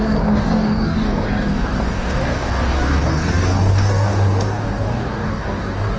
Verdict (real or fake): fake